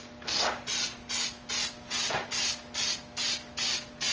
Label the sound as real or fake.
real